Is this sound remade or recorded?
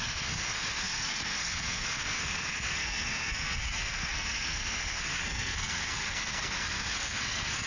remade